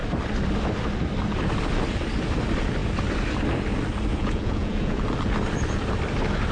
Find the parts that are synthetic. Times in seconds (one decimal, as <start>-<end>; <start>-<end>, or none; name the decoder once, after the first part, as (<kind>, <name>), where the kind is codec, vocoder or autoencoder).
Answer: 4.1-5.0 (vocoder, Vocos)